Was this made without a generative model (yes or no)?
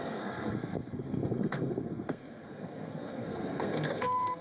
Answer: no